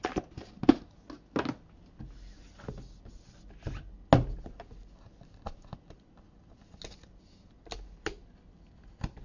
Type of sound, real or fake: real